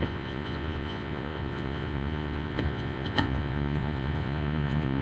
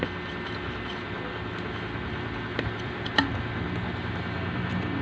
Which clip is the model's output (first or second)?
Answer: first